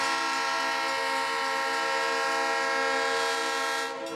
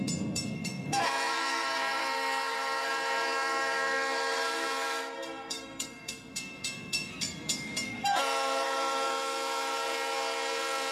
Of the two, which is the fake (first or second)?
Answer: second